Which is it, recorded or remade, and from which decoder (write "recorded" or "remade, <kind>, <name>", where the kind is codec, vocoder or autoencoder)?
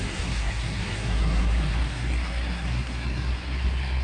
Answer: remade, codec, SNAC